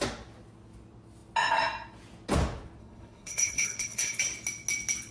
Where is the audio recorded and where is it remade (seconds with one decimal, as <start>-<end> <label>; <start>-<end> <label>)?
0.0-2.8 recorded; 2.8-4.2 remade; 4.2-5.1 recorded